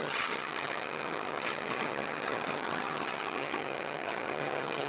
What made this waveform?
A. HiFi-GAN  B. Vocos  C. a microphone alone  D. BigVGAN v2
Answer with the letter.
A